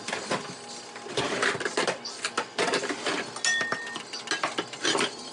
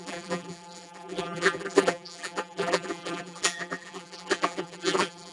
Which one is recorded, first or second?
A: first